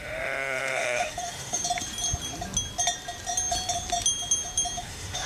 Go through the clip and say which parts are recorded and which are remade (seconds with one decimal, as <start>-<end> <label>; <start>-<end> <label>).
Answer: 0.0-1.6 remade; 1.6-4.8 recorded; 4.8-5.3 remade